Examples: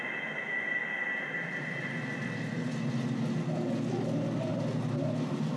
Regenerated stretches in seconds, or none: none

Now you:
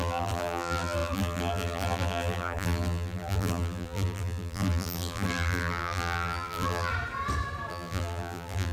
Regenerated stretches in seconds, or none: 0.0-6.9 (vocoder, BigVGAN v2); 7.7-8.7

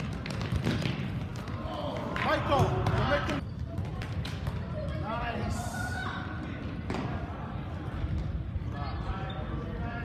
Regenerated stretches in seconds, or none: 3.9-9.1 (vocoder, BigVGAN v2)

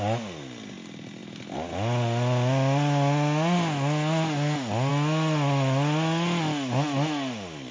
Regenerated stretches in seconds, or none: none

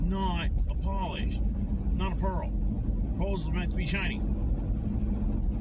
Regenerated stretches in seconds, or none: 0.9-2.0 (vocoder, BigVGAN v2)

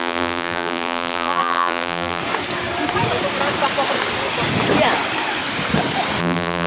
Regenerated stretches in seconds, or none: 0.0-2.2 (vocoder, BigVGAN v2); 6.2-6.7